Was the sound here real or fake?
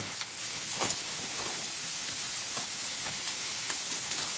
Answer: fake